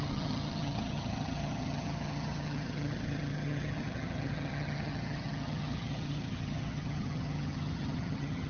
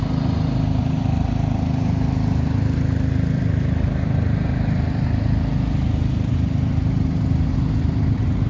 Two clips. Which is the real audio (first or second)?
second